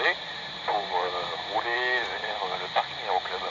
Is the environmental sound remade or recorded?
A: recorded